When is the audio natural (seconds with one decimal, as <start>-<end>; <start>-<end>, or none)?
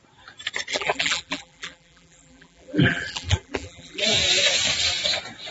0.0-0.7; 4.0-5.5